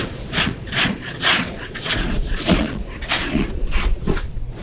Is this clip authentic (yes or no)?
no